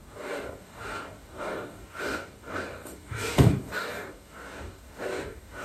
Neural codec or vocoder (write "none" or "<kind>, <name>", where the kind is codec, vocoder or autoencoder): codec, DAC